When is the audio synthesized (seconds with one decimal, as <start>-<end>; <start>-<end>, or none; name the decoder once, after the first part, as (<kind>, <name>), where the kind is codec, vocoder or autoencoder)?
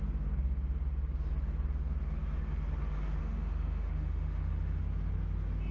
3.2-4.8 (autoencoder, DAC-VAE)